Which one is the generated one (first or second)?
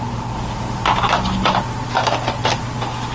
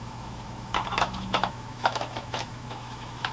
second